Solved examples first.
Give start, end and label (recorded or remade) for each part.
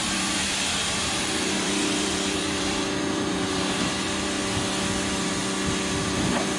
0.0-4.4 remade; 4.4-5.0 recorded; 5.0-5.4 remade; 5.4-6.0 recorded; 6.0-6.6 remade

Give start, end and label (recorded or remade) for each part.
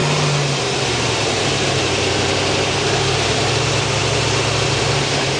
0.0-5.4 remade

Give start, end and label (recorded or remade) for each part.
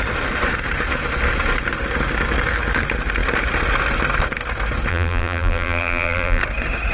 0.0-4.9 recorded; 4.9-6.4 remade; 6.4-6.9 recorded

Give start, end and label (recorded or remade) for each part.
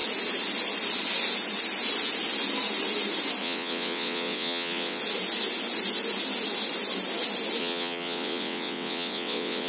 0.0-3.4 recorded; 3.4-5.0 remade; 5.0-7.6 recorded; 7.6-9.7 remade